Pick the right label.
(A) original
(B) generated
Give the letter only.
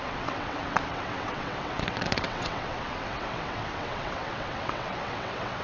B